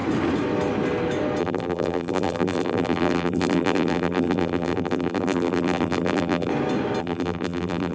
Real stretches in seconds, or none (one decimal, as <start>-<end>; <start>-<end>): 0.0-1.4; 6.5-7.0